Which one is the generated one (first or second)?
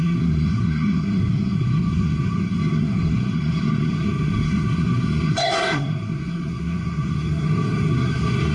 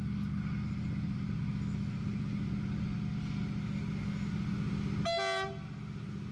first